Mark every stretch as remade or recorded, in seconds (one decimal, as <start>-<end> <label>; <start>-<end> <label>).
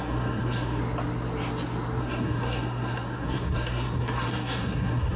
0.0-0.8 remade; 0.8-2.0 recorded; 2.0-5.2 remade